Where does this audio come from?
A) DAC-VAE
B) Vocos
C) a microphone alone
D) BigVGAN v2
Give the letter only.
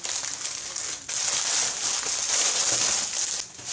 C